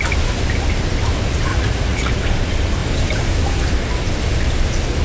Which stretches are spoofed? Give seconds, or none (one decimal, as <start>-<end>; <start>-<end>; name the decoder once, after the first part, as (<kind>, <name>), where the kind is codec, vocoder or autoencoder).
1.5-2.1 (vocoder, Vocos)